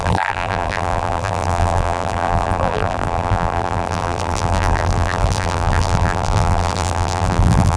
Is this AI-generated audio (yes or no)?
yes